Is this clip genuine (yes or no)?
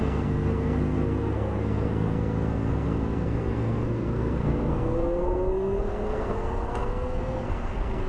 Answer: no